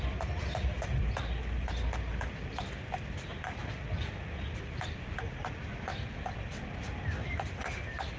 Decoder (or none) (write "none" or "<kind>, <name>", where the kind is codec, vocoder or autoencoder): none